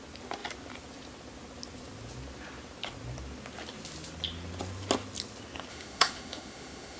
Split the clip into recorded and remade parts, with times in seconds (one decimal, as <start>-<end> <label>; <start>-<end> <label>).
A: 0.0-5.7 recorded; 5.7-7.0 remade